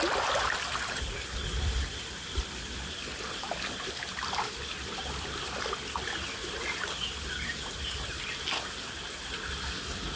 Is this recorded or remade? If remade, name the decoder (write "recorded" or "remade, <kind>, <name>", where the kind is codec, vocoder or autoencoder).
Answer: recorded